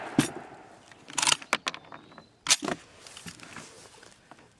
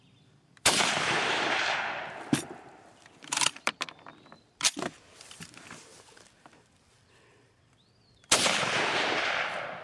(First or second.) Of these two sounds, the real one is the first